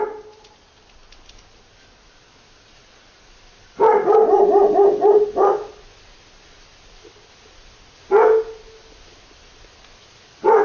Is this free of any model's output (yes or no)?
yes